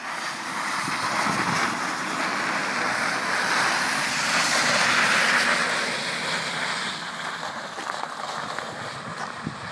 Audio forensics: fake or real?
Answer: real